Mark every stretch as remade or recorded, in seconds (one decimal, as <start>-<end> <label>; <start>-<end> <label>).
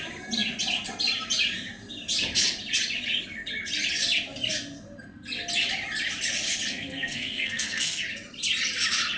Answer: 0.0-6.7 recorded; 6.7-8.0 remade; 8.0-9.2 recorded